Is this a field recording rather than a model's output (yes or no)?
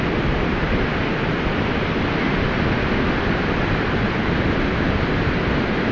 yes